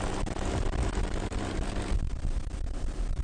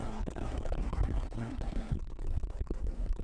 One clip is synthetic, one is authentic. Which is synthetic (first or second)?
second